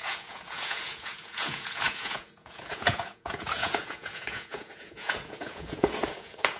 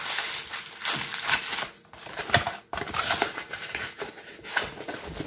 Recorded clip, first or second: second